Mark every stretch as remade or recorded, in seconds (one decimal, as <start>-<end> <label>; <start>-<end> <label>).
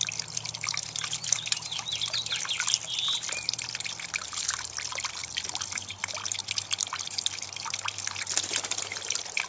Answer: 0.0-9.5 recorded